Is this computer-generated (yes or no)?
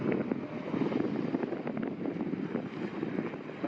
no